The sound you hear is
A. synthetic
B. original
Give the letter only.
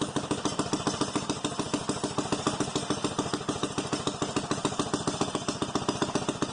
B